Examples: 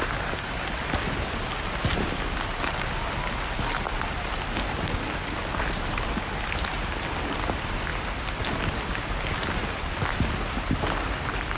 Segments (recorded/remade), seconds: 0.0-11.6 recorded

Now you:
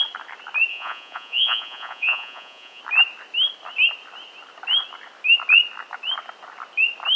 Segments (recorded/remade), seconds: 0.0-0.7 recorded; 0.7-2.8 remade; 2.8-7.2 recorded

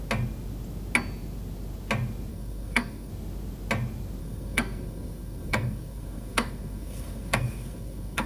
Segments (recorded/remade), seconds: 0.0-2.3 recorded; 2.3-3.1 remade; 3.1-4.2 recorded; 4.2-8.3 remade

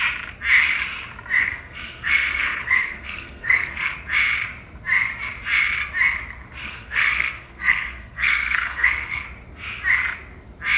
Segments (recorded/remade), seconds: 0.0-1.4 recorded; 1.4-3.9 remade; 3.9-6.6 recorded; 6.6-9.2 remade; 9.2-10.8 recorded

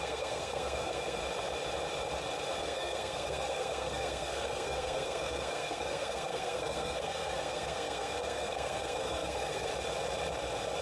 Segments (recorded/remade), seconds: 0.0-1.2 remade; 1.2-2.6 recorded; 2.6-9.7 remade; 9.7-10.8 recorded